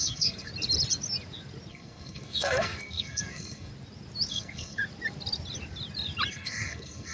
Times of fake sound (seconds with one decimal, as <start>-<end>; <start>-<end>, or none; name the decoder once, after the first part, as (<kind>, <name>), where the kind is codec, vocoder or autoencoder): 0.0-0.5 (codec, SNAC); 1.7-3.7; 4.3-4.8; 6.3-7.1

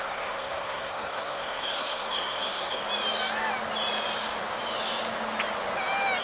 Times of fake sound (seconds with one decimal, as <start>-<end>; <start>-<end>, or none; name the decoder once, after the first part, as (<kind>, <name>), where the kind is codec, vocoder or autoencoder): 0.0-2.8 (codec, SNAC)

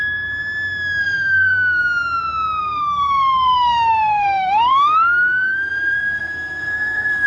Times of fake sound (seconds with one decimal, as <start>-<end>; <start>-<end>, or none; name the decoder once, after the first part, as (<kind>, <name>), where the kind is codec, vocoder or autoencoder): 1.0-1.8 (codec, SNAC); 2.6-7.3

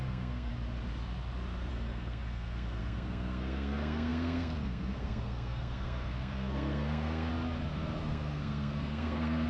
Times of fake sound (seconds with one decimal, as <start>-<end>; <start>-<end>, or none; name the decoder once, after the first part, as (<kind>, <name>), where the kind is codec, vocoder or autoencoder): 0.0-0.5 (codec, SNAC); 1.7-7.3; 8.0-9.5